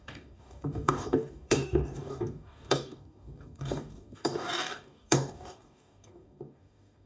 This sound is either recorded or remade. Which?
remade